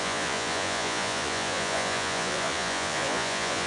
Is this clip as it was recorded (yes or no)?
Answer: no